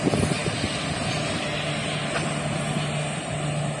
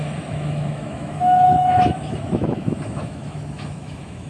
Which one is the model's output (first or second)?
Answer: second